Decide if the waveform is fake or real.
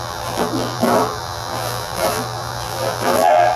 fake